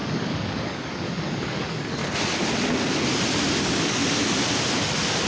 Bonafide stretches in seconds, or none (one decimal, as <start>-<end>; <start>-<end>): 2.0-3.6; 4.0-5.3